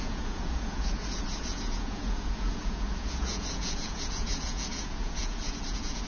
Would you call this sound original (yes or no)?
no